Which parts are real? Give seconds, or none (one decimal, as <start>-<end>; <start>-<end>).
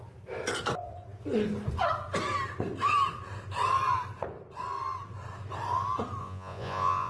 0.0-6.2